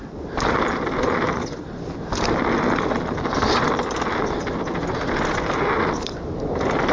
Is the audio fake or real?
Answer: real